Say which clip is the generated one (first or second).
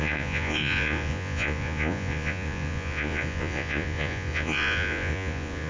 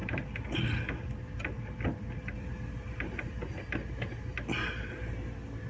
first